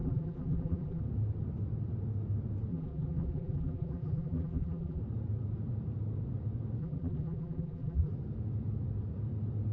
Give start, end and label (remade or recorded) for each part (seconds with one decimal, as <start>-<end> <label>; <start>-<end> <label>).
0.0-1.0 remade; 1.0-2.7 recorded; 2.7-5.0 remade; 5.0-6.8 recorded; 6.8-8.1 remade; 8.1-9.7 recorded